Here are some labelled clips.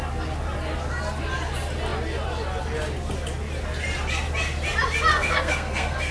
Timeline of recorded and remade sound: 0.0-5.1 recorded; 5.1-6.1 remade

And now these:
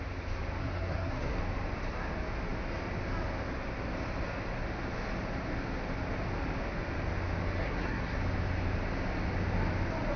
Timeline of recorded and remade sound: 0.0-0.6 recorded; 0.6-1.4 remade; 1.4-7.6 recorded; 7.6-8.2 remade; 8.2-10.2 recorded

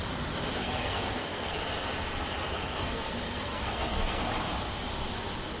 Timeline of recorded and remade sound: 0.0-0.6 recorded; 0.6-1.6 remade; 1.6-2.6 recorded; 2.6-4.2 remade; 4.2-5.6 recorded

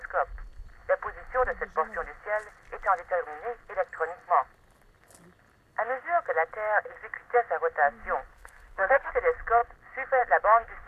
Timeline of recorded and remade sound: 0.0-8.3 recorded; 8.3-9.1 remade; 9.1-10.9 recorded

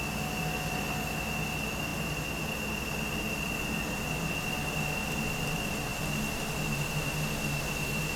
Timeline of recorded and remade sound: 0.0-8.2 recorded

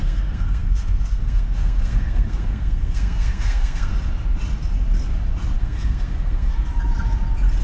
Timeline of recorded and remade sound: 0.0-3.9 remade; 3.9-5.6 recorded; 5.6-6.7 remade; 6.7-7.6 recorded